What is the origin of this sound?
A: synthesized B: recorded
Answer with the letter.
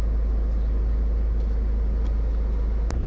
B